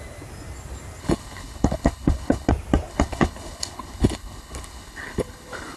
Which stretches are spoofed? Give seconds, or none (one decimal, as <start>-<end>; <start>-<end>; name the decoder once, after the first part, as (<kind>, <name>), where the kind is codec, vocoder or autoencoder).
1.0-2.5 (codec, HILCodec); 2.9-5.8